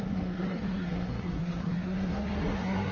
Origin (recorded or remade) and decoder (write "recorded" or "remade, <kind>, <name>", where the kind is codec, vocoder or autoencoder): remade, codec, SNAC